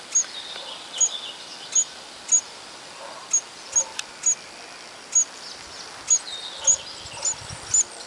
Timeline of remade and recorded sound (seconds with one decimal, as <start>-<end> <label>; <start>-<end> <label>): 0.0-8.1 recorded